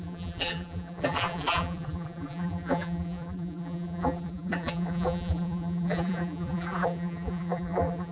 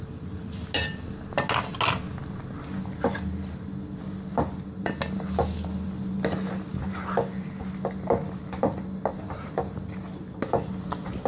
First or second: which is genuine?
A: second